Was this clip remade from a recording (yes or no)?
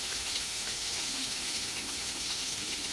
yes